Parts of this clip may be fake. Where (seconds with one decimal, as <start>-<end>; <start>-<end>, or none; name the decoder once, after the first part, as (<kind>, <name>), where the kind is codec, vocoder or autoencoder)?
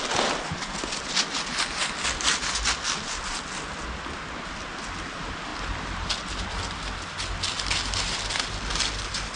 none